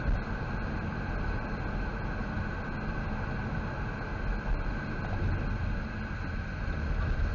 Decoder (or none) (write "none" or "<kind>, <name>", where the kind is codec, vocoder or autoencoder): none